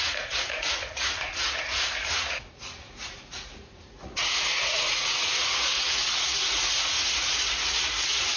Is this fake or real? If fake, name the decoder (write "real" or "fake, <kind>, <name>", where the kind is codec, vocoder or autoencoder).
fake, vocoder, Vocos